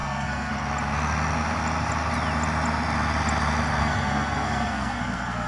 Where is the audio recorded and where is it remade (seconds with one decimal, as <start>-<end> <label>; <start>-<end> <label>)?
0.0-0.5 remade; 0.5-3.8 recorded; 3.8-5.5 remade